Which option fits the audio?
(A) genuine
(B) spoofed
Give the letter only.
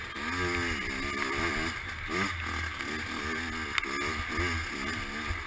A